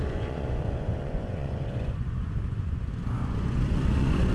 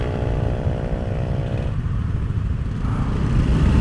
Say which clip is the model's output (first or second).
first